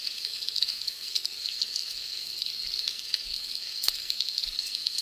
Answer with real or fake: fake